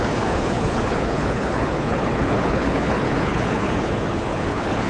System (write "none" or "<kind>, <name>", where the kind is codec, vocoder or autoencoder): codec, HILCodec